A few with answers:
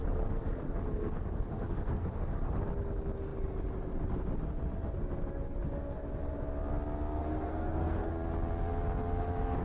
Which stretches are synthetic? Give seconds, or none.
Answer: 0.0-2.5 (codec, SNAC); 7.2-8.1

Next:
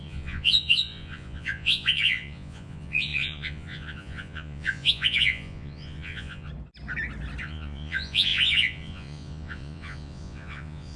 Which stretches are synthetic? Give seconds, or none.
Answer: 0.0-6.5 (vocoder, Vocos); 7.4-11.0

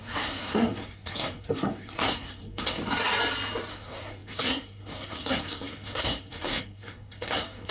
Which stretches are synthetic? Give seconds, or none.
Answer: 0.0-2.8 (codec, SNAC); 3.7-7.7

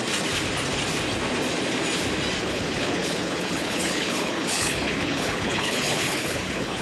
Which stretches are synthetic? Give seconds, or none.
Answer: 2.4-6.8 (codec, HILCodec)

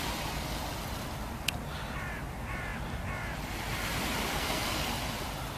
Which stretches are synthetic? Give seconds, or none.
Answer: 4.3-4.9 (codec, SNAC)

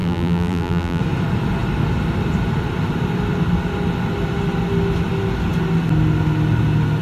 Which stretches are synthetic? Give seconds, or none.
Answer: 0.0-1.0 (vocoder, BigVGAN v2)

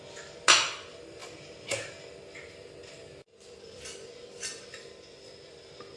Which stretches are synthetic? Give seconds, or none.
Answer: none

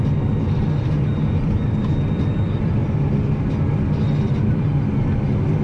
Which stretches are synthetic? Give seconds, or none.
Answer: 0.0-2.8 (vocoder, BigVGAN v2); 4.2-5.6